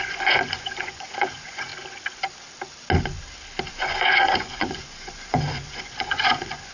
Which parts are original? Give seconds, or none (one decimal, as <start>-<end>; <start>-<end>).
1.7-3.7